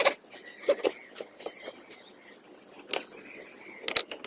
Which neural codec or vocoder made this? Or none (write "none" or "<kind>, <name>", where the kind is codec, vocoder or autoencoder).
none